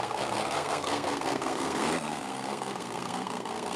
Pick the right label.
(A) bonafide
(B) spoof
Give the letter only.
B